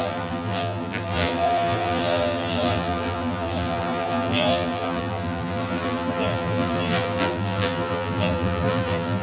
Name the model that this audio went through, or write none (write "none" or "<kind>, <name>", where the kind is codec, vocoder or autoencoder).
vocoder, BigVGAN v2